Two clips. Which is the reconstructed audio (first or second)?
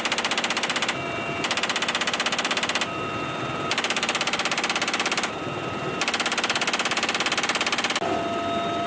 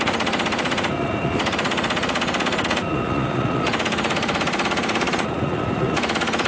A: second